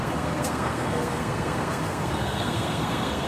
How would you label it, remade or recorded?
remade